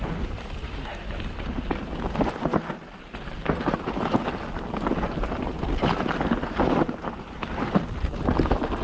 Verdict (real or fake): real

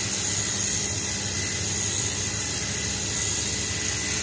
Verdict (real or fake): real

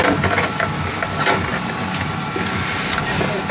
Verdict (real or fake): real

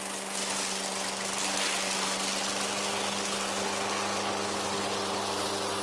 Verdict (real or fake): real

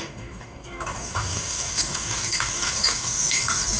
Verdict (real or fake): fake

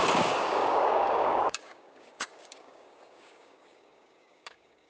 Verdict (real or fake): fake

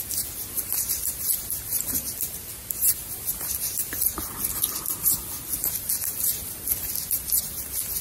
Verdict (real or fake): real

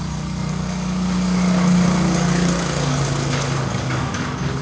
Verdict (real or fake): fake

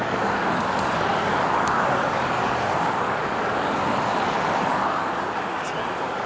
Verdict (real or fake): fake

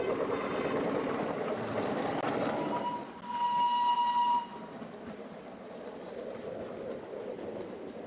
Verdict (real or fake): real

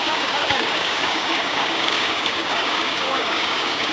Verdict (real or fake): fake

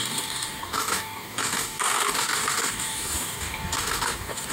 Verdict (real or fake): fake